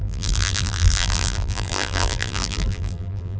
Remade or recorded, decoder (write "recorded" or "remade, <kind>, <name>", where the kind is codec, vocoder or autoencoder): remade, vocoder, BigVGAN v2